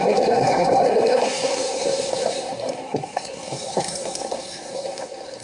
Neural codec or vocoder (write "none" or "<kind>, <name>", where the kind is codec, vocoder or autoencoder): codec, SNAC